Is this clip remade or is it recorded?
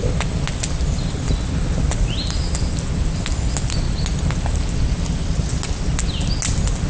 recorded